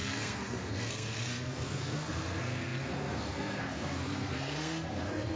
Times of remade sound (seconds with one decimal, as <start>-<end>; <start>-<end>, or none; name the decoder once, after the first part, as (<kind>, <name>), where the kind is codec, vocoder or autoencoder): 0.0-5.4 (codec, SNAC)